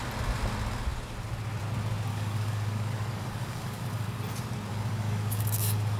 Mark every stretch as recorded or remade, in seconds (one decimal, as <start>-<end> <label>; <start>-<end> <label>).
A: 0.0-2.1 recorded; 2.1-4.2 remade; 4.2-4.7 recorded; 4.7-6.0 remade